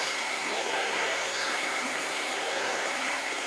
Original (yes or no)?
no